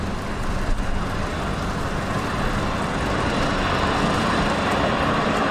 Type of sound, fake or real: real